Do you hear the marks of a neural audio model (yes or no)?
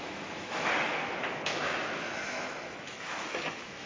yes